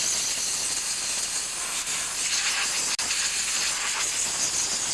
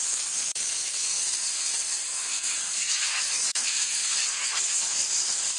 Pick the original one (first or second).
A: first